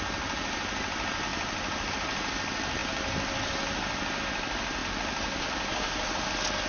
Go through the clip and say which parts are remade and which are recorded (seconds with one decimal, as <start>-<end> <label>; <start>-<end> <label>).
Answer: 0.0-1.3 recorded; 1.3-1.9 remade; 1.9-4.8 recorded; 4.8-5.4 remade; 5.4-6.7 recorded